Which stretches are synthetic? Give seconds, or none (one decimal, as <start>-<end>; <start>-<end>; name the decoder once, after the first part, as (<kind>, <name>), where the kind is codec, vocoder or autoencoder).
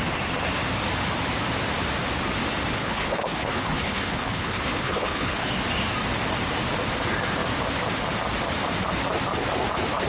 2.8-5.5 (codec, HILCodec)